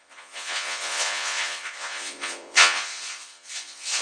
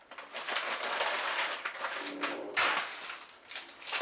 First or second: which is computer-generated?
first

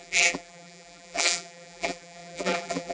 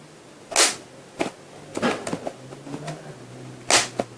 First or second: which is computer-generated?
first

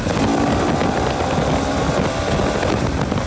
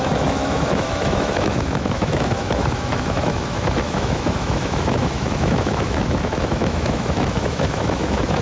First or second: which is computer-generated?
second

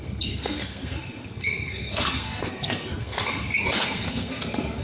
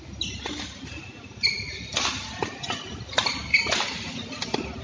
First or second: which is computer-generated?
first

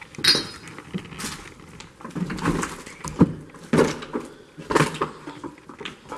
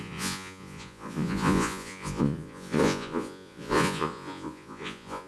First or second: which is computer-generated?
second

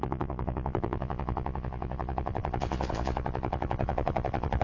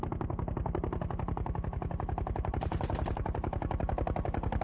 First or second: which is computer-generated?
first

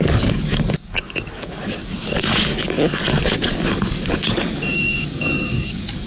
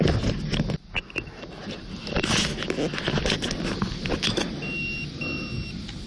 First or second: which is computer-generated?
first